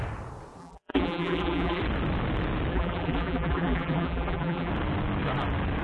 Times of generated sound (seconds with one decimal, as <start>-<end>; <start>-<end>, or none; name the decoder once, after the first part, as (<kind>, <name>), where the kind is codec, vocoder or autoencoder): 0.6-1.8 (vocoder, BigVGAN v2); 2.7-4.7